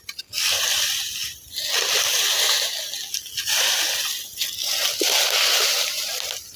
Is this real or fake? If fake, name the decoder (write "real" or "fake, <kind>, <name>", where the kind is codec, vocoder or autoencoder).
real